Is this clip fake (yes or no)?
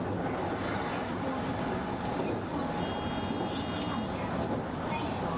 no